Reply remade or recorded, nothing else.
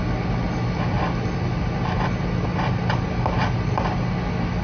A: recorded